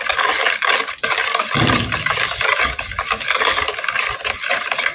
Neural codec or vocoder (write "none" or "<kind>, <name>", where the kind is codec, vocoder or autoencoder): none